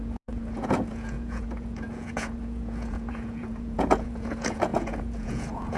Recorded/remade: remade